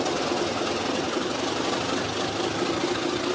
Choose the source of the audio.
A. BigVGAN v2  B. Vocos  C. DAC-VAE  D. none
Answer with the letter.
D